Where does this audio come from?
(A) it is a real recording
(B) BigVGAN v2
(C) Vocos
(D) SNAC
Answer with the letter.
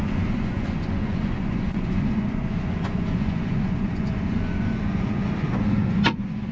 C